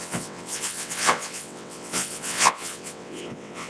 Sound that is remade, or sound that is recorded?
remade